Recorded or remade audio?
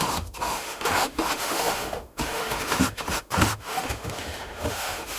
remade